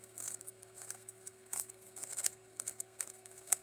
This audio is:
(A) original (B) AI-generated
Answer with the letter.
B